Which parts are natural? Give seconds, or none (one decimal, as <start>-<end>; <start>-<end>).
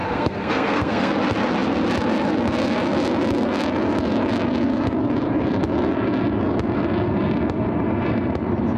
1.1-8.8